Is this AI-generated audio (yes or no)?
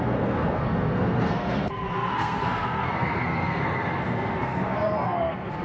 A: yes